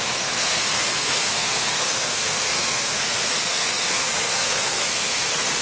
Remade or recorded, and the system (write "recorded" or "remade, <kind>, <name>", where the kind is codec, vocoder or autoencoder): remade, codec, SNAC